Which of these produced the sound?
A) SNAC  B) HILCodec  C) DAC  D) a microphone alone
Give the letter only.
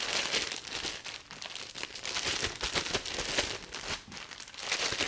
D